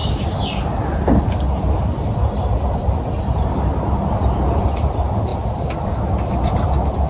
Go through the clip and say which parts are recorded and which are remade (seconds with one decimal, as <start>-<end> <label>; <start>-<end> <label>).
0.0-7.1 recorded